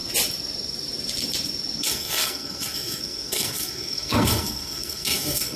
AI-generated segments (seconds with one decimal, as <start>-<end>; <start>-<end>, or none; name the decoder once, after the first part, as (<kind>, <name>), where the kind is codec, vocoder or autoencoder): 1.8-5.6 (codec, SNAC)